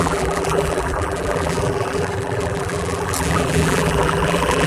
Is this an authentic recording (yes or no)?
no